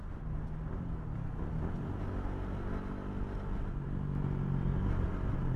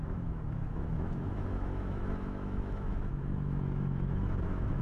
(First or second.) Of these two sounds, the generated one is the second